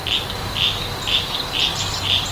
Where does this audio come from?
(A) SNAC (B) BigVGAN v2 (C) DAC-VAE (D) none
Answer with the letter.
D